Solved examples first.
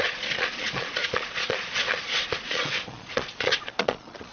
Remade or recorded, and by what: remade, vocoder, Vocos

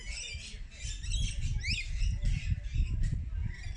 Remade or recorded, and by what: recorded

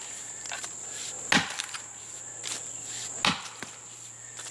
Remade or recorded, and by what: recorded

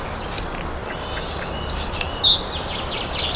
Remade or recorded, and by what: recorded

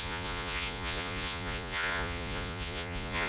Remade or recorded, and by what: remade, vocoder, Vocos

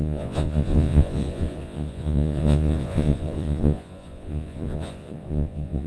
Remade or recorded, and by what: remade, vocoder, Vocos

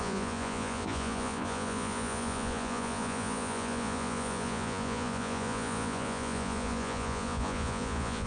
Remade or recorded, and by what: remade, vocoder, Vocos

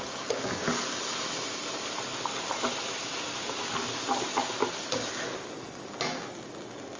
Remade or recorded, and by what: recorded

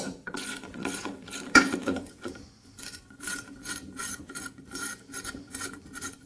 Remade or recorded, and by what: remade, vocoder, Vocos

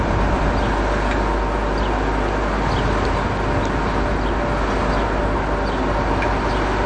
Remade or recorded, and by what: recorded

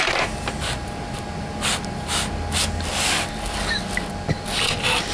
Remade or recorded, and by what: recorded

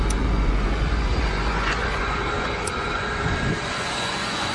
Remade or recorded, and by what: remade, vocoder, Vocos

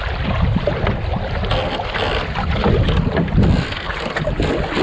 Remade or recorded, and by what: recorded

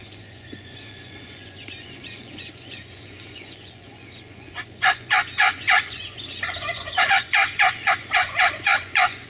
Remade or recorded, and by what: remade, vocoder, Vocos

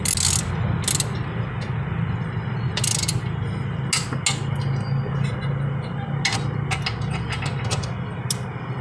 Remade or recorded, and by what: recorded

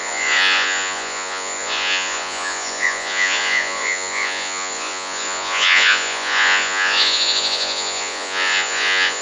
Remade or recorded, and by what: remade, vocoder, Vocos